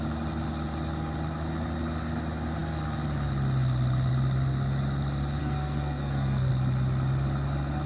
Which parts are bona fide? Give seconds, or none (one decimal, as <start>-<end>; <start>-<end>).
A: 0.0-5.4; 6.5-7.9